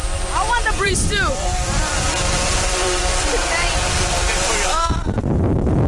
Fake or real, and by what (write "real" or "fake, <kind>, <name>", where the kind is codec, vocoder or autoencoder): fake, vocoder, BigVGAN v2